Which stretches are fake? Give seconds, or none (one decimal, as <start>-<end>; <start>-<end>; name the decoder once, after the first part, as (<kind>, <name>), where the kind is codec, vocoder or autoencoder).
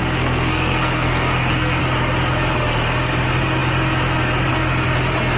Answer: 0.0-1.8 (codec, SNAC)